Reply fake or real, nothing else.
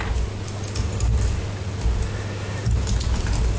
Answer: real